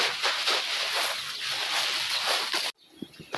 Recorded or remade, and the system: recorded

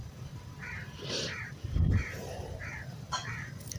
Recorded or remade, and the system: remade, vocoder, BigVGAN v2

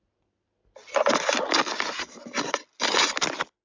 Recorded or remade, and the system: recorded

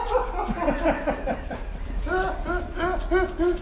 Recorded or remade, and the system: recorded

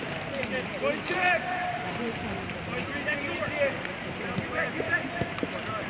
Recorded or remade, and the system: remade, vocoder, BigVGAN v2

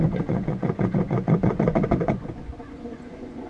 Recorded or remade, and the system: remade, vocoder, Vocos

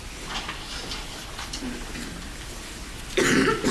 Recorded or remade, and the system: recorded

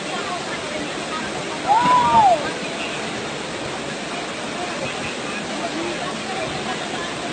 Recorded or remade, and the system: recorded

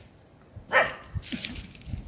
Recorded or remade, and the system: recorded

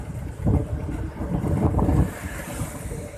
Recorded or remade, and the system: recorded